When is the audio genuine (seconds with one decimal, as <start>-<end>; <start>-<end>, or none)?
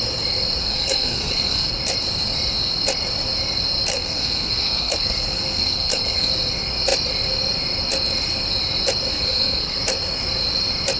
0.0-0.6; 1.7-3.9; 6.3-9.1; 9.8-11.0